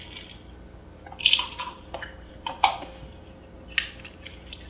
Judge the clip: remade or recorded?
recorded